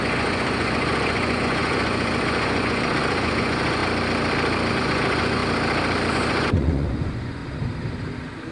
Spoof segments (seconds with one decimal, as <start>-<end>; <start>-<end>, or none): 0.0-3.8; 4.7-5.4; 6.1-7.4